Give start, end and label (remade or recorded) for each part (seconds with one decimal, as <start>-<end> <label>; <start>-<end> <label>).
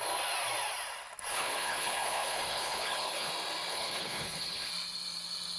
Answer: 0.0-1.3 recorded; 1.3-3.3 remade; 3.3-3.7 recorded; 3.7-4.7 remade; 4.7-5.6 recorded